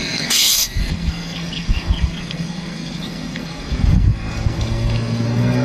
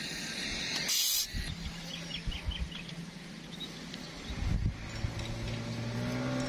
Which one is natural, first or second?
second